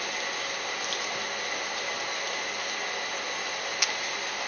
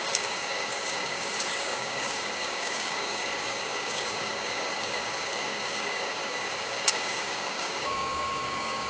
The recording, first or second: first